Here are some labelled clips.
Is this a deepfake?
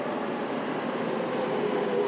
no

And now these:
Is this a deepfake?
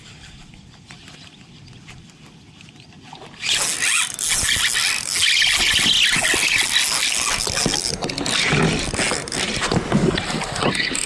no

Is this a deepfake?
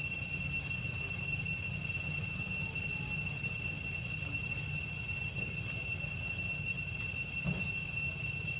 no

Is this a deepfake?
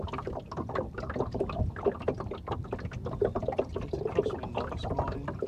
no